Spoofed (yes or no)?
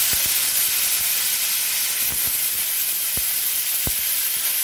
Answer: no